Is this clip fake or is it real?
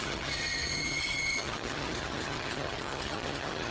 fake